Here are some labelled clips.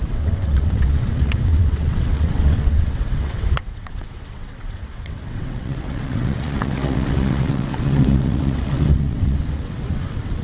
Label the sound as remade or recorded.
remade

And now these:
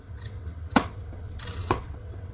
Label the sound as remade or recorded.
remade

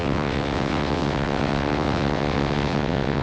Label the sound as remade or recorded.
remade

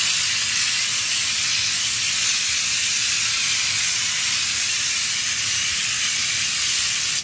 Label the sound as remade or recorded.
recorded